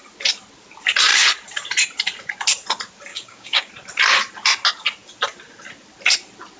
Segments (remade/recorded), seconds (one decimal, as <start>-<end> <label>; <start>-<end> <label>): 0.0-3.1 recorded; 3.1-3.7 remade; 3.7-6.6 recorded